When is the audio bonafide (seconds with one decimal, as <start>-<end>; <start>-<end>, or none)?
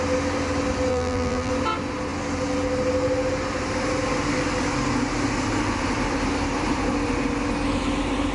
0.0-0.9; 1.5-8.3